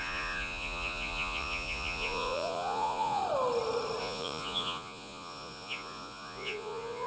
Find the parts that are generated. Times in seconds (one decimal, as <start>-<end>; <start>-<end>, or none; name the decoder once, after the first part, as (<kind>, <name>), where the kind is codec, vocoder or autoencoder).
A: 0.0-3.2 (vocoder, Vocos); 4.0-7.1